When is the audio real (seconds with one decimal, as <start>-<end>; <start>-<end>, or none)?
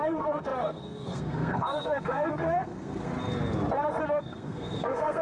3.1-4.2